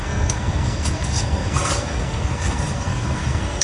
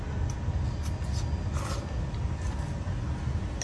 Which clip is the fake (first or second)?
first